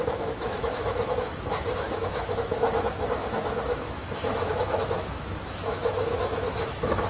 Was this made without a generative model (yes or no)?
no